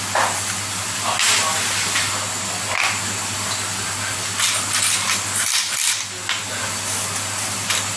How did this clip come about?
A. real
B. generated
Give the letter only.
A